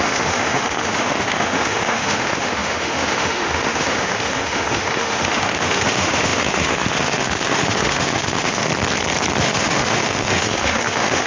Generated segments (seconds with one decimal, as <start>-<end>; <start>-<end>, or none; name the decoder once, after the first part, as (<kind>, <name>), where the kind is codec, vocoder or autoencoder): 0.0-8.7 (autoencoder, DAC-VAE); 9.4-11.3